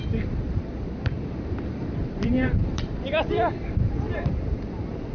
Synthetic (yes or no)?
yes